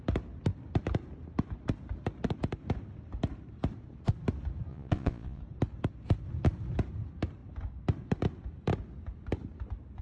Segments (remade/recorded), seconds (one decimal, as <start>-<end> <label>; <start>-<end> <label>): 0.0-4.7 recorded; 4.7-5.4 remade; 5.4-10.0 recorded